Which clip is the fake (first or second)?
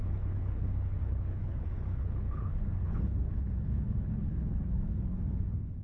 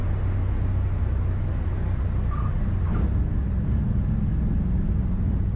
first